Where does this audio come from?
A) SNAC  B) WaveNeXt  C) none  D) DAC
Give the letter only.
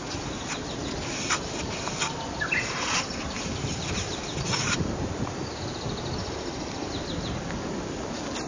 C